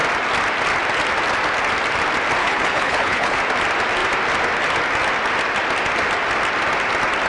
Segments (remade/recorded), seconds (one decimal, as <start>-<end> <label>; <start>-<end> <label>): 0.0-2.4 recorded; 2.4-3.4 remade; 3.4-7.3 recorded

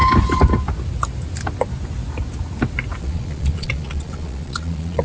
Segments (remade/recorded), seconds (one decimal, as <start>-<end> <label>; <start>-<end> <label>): 0.0-3.0 recorded; 3.0-5.0 remade

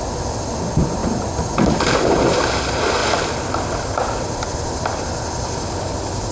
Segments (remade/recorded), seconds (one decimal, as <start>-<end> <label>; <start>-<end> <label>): 0.0-3.0 remade; 3.0-4.8 recorded; 4.8-6.3 remade

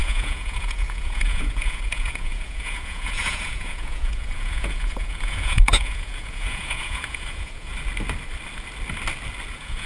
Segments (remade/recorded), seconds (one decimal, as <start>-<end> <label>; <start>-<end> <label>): 0.0-7.7 remade; 7.7-9.5 recorded; 9.5-9.9 remade

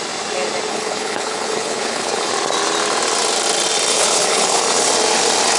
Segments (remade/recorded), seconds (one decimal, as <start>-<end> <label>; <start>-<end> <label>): 0.0-0.7 recorded; 0.7-2.3 remade; 2.3-3.9 recorded; 3.9-4.6 remade; 4.6-5.6 recorded

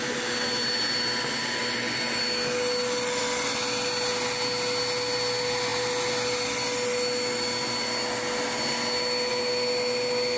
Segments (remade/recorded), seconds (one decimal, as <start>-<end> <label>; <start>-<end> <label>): 0.0-10.4 recorded

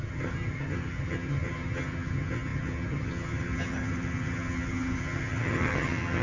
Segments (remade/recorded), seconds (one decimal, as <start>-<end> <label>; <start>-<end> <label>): 0.0-6.2 remade

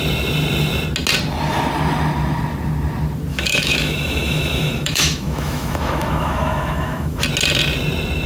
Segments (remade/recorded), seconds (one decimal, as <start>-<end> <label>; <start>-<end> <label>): 0.0-3.3 recorded; 3.3-7.2 remade; 7.2-8.3 recorded